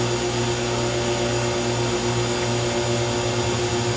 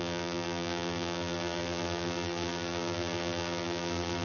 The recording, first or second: first